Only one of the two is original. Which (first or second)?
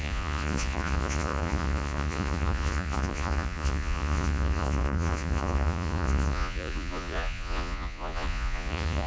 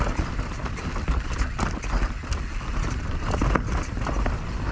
second